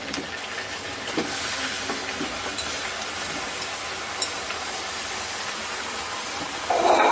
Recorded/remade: recorded